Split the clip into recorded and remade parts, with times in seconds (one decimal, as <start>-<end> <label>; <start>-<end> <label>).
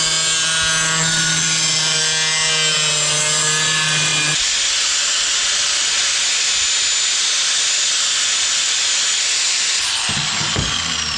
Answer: 0.0-11.2 recorded